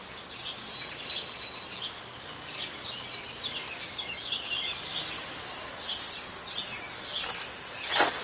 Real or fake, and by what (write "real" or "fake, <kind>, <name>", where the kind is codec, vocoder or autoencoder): real